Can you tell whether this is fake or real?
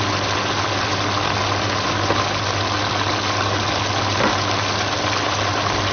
real